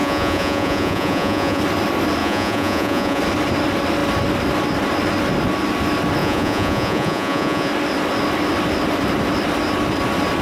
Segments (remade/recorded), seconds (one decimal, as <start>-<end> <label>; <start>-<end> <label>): 0.0-1.6 remade; 1.6-2.2 recorded; 2.2-3.2 remade; 3.2-6.2 recorded; 6.2-7.7 remade; 7.7-10.4 recorded